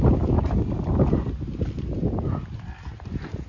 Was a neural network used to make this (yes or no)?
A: no